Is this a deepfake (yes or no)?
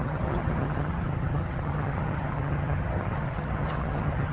yes